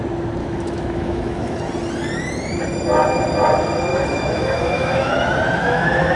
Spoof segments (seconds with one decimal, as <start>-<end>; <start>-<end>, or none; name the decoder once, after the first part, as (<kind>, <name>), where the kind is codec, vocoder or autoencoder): 0.4-1.6 (autoencoder, DAC-VAE); 3.9-5.1; 5.6-6.2